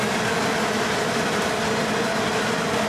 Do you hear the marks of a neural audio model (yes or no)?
no